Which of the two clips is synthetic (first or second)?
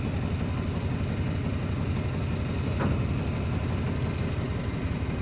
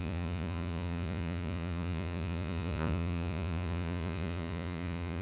second